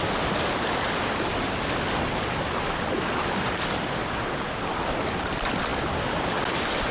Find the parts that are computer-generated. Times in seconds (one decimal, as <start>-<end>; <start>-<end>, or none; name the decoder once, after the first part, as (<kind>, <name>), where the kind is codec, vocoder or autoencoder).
none